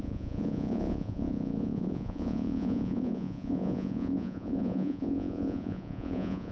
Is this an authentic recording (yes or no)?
no